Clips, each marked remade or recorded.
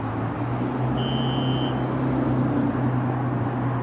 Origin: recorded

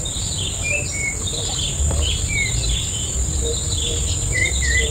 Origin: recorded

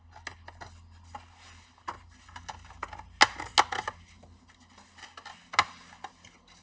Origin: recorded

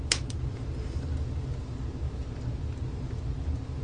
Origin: recorded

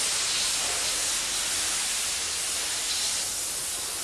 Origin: recorded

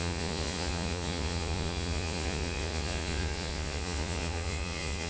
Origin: remade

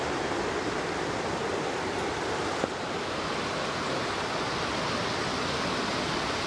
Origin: recorded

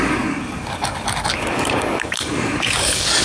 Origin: remade